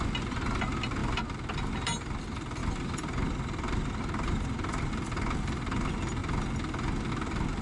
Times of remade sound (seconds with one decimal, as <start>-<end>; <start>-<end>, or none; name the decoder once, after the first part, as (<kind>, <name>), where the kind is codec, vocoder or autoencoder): 2.6-4.9 (vocoder, BigVGAN v2)